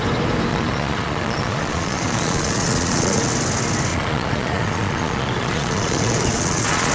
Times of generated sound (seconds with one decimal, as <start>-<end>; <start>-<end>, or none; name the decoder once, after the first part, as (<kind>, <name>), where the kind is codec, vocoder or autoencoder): 0.5-3.3 (vocoder, Vocos); 3.9-6.9